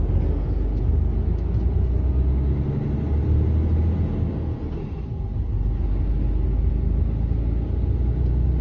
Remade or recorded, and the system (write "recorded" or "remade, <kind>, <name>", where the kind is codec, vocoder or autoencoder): recorded